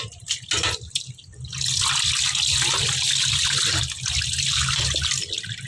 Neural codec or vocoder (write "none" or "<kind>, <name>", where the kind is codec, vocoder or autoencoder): none